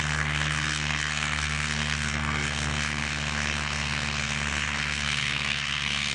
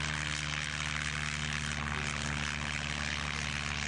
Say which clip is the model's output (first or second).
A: first